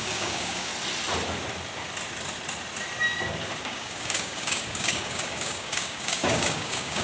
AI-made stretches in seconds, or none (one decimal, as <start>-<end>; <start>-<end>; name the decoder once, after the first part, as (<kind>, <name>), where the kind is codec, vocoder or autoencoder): 0.0-0.7 (codec, DAC); 3.6-7.0